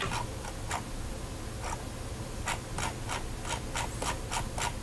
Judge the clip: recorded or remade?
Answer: recorded